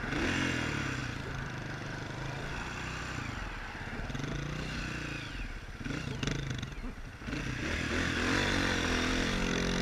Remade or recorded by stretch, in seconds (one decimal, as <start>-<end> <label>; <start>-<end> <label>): 0.0-1.0 recorded; 1.0-3.0 remade; 3.0-7.6 recorded; 7.6-9.1 remade; 9.1-9.8 recorded